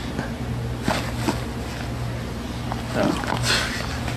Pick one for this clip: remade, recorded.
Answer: recorded